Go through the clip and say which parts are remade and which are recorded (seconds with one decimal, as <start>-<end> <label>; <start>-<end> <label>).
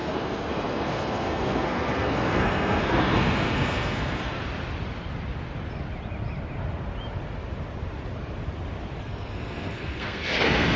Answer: 0.0-4.4 remade; 4.4-9.0 recorded; 9.0-10.8 remade